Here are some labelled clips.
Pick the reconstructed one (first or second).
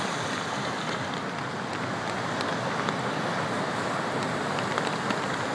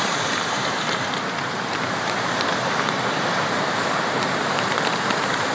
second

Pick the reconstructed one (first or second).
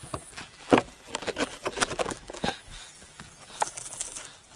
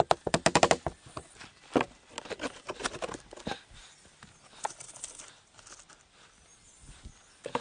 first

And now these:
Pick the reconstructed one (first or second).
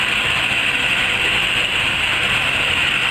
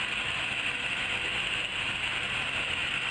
first